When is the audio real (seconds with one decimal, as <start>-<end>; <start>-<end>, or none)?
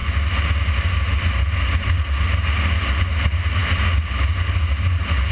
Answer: 0.0-5.3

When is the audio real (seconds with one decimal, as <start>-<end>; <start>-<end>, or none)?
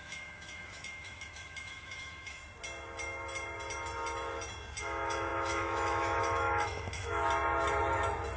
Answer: 2.4-4.8; 7.2-8.4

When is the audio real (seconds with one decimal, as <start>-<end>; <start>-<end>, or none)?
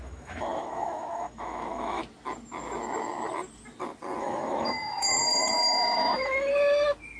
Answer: 2.0-4.2; 6.5-7.2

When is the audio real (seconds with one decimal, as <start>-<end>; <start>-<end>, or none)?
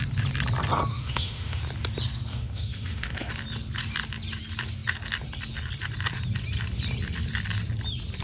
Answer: 0.0-0.9; 1.6-2.3; 3.3-8.2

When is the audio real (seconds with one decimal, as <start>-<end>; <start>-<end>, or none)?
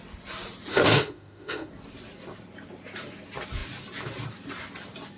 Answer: 0.0-0.7; 1.7-5.2